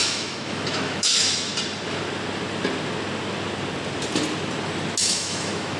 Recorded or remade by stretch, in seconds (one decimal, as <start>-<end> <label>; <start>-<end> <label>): 0.0-1.5 remade; 1.5-5.0 recorded; 5.0-5.8 remade